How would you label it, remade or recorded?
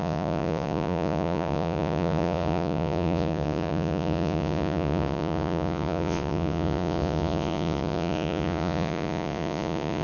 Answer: remade